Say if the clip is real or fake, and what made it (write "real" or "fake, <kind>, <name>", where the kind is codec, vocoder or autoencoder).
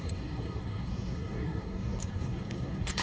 fake, codec, SNAC